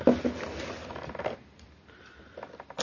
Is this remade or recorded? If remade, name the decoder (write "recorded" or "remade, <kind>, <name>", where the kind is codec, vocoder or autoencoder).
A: recorded